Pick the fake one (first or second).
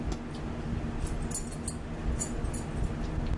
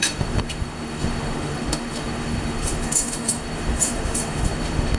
second